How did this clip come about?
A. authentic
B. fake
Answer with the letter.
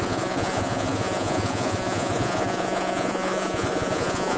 B